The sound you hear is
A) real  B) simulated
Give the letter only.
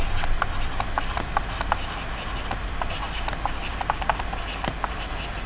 A